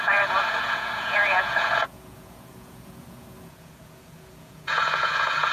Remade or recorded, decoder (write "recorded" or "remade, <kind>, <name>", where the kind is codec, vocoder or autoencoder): remade, vocoder, Vocos